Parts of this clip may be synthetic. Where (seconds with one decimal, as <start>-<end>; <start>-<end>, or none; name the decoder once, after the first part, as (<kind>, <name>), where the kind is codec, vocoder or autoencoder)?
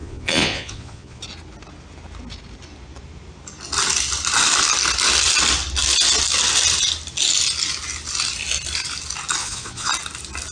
0.0-1.2 (vocoder, Vocos); 9.4-9.9